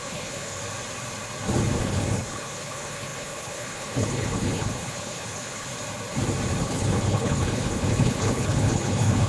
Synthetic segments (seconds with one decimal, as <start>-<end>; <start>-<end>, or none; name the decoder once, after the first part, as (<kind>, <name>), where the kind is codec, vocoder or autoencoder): 0.0-0.6 (codec, HILCodec); 1.8-5.7; 6.6-9.3